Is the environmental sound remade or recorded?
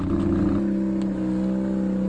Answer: recorded